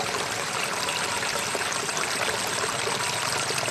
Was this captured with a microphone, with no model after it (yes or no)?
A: yes